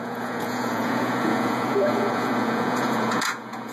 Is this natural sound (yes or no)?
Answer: no